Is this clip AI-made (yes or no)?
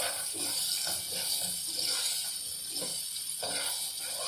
no